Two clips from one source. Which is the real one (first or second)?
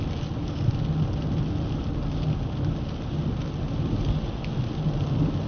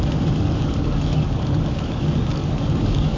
first